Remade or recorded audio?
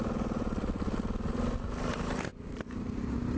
remade